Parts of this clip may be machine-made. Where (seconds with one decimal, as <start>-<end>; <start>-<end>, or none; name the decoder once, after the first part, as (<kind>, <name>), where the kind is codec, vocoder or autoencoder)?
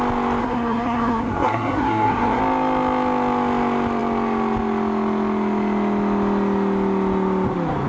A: 0.4-2.4 (codec, SNAC)